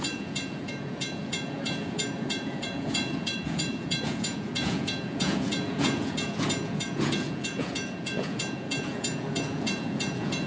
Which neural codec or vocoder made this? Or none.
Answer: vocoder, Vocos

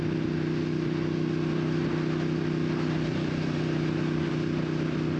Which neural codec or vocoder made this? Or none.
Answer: none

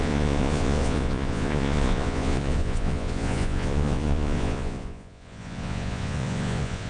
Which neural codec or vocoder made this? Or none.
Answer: vocoder, Vocos